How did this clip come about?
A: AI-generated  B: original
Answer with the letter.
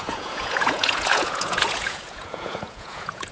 A